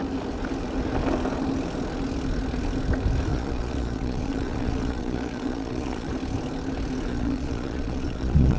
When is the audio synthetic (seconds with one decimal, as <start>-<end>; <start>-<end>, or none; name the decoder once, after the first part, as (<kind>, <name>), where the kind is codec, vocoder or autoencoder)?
3.3-6.1 (vocoder, Vocos); 7.1-8.6